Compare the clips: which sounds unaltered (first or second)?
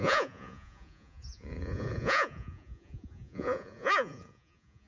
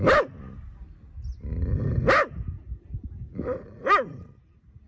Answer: second